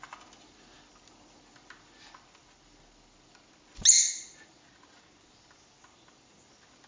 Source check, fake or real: real